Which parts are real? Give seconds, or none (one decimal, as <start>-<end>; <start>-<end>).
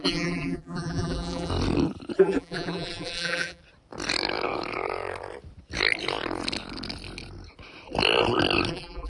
1.5-2.2; 3.6-8.7